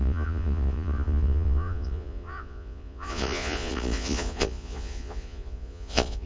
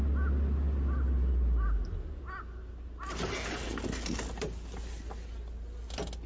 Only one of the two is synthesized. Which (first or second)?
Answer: first